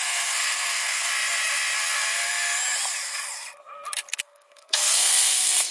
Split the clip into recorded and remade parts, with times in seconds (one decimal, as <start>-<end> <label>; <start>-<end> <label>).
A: 0.0-1.1 remade; 1.1-4.2 recorded; 4.2-5.7 remade